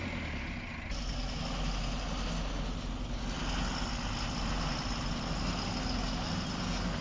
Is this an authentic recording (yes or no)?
yes